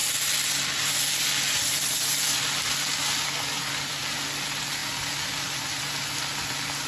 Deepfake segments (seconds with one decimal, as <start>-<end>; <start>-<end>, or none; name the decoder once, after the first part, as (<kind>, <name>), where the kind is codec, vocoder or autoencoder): none